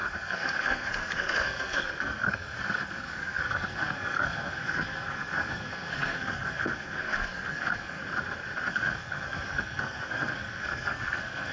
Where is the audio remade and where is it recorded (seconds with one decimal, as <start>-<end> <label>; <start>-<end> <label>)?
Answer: 0.0-8.0 remade; 8.0-8.7 recorded; 8.7-11.5 remade